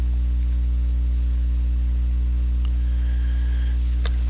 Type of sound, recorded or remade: recorded